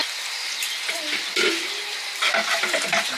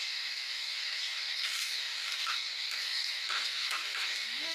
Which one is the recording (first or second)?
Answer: first